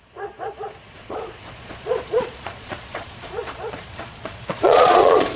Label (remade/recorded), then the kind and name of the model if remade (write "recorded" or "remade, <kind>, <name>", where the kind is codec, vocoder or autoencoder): remade, vocoder, Vocos